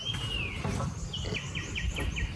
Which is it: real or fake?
real